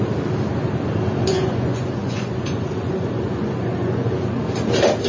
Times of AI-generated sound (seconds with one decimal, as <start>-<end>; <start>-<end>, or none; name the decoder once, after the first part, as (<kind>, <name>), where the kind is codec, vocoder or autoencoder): 1.3-4.4 (vocoder, Vocos)